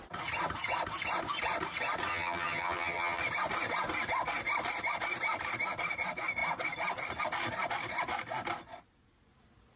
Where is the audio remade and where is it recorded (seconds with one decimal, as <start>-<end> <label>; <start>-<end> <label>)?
0.0-2.1 recorded; 2.1-3.2 remade; 3.2-9.8 recorded